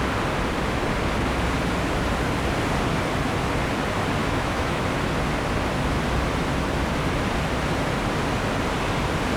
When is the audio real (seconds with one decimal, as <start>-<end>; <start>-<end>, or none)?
0.0-4.2; 4.8-9.4